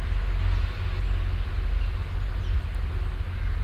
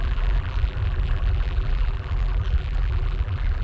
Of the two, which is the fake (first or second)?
second